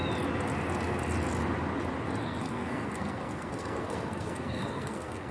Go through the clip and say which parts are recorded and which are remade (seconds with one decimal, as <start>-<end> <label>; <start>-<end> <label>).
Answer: 0.0-2.2 recorded; 2.2-5.3 remade